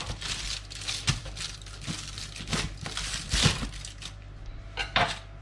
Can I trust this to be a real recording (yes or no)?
yes